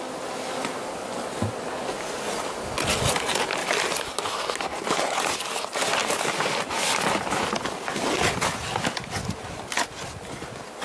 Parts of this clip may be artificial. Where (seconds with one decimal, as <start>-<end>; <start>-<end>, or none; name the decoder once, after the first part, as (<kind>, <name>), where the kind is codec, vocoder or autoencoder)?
3.6-4.2 (vocoder, BigVGAN v2)